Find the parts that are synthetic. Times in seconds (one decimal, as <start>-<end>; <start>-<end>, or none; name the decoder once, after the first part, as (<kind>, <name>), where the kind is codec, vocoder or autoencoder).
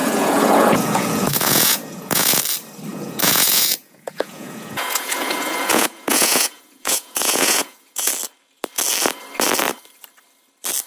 0.0-2.4 (vocoder, Vocos); 2.9-8.1